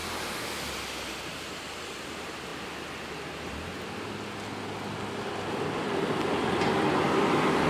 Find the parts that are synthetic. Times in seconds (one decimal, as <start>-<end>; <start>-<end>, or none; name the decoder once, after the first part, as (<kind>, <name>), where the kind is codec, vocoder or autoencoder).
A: none